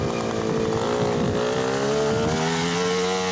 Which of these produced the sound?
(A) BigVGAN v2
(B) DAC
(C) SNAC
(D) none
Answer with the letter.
D